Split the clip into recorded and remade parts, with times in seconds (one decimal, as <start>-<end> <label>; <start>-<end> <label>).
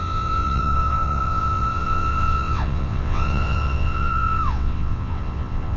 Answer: 0.0-5.8 remade